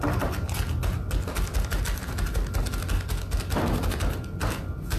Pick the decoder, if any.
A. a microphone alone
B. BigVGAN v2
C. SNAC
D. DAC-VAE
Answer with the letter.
A